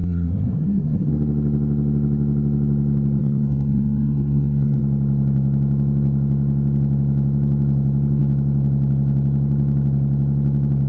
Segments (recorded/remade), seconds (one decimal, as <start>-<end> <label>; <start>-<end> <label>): 0.0-1.1 remade; 1.1-3.2 recorded; 3.2-4.8 remade; 4.8-10.9 recorded